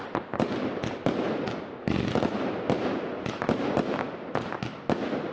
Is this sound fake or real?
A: real